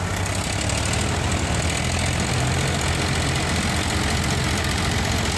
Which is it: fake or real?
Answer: real